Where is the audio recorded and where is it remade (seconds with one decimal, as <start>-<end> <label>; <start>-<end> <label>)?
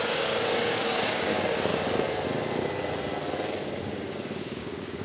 0.0-1.7 remade; 1.7-3.6 recorded; 3.6-5.0 remade